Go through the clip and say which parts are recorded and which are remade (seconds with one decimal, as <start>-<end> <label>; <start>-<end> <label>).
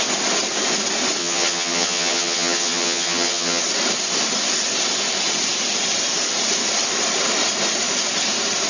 0.0-1.2 recorded; 1.2-3.6 remade; 3.6-8.7 recorded